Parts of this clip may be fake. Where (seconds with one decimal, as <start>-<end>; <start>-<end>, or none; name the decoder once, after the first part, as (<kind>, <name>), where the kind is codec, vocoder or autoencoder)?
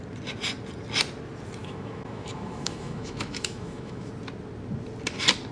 1.6-4.1 (autoencoder, DAC-VAE)